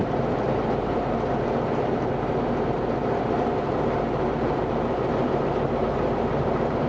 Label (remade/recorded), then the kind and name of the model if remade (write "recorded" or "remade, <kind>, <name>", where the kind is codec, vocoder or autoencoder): remade, vocoder, BigVGAN v2